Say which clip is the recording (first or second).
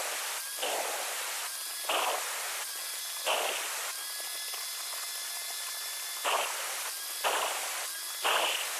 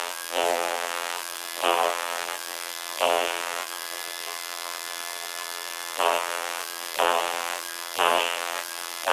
first